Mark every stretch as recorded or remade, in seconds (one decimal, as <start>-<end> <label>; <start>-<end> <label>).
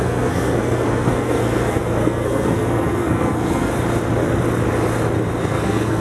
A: 0.0-3.7 remade; 3.7-5.4 recorded; 5.4-6.0 remade